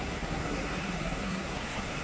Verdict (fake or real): fake